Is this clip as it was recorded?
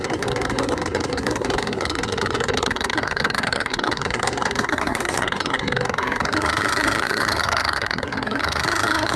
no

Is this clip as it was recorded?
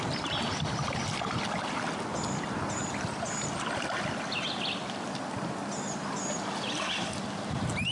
yes